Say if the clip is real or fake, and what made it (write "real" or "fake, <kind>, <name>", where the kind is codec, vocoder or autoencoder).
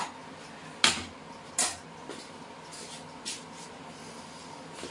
real